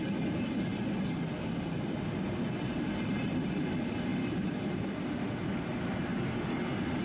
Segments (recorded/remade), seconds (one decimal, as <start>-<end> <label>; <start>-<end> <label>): 0.0-4.1 recorded; 4.1-5.1 remade; 5.1-6.1 recorded; 6.1-7.0 remade